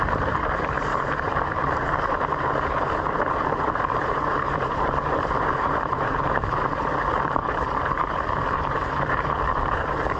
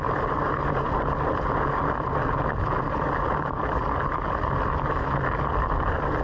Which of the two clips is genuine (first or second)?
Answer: second